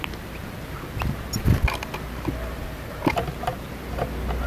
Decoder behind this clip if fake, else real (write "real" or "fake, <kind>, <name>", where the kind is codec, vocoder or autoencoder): real